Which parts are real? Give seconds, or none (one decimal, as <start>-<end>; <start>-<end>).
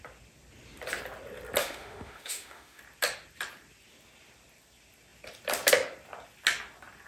0.0-1.6; 2.8-7.1